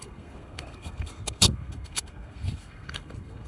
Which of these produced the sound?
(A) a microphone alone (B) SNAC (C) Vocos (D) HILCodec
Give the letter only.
B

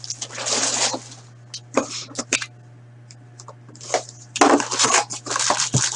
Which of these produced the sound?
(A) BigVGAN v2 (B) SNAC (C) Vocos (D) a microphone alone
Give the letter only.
D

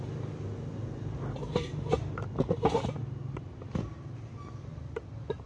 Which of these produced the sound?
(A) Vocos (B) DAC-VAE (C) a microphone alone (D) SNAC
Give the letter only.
C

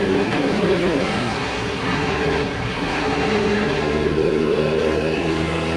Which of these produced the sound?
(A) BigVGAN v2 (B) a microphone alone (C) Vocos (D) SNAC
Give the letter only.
D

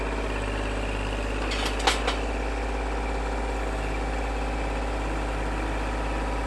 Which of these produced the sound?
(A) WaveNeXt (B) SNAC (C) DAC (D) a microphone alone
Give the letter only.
D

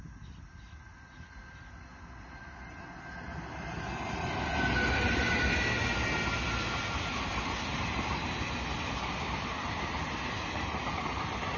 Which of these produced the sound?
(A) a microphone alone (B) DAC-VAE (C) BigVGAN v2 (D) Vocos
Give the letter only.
A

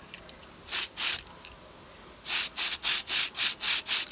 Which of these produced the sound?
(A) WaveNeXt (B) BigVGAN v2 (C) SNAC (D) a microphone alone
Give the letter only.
D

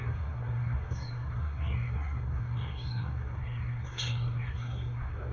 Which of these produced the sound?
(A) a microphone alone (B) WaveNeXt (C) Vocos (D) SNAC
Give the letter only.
D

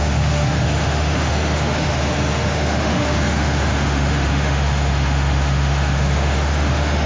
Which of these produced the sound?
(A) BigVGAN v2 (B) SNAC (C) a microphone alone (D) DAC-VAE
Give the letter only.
D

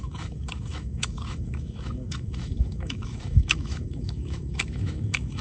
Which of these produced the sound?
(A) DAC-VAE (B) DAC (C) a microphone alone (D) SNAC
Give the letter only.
A